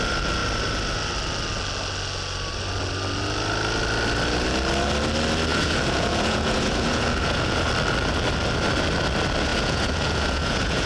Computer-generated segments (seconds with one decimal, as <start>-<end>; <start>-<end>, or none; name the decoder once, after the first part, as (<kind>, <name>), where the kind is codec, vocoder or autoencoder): 5.5-7.7 (vocoder, Vocos); 9.5-10.9